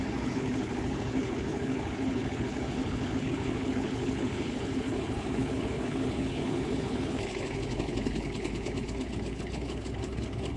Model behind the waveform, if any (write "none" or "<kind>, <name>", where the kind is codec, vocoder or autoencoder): codec, HILCodec